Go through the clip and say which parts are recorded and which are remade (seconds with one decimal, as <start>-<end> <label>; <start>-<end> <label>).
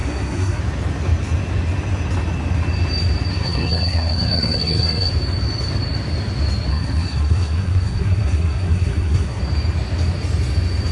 0.0-0.6 remade; 0.6-3.3 recorded; 3.3-5.1 remade; 5.1-6.7 recorded; 6.7-9.4 remade; 9.4-10.9 recorded